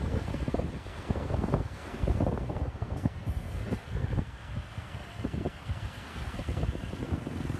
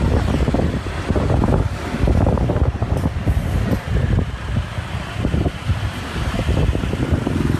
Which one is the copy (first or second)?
first